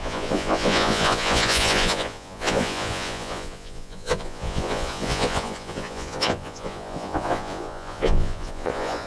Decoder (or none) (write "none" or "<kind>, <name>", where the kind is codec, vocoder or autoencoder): vocoder, Vocos